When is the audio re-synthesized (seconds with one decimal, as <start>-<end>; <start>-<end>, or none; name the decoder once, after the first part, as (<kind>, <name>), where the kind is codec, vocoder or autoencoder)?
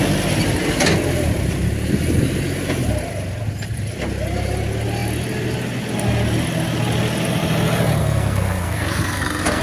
8.0-9.6 (codec, SNAC)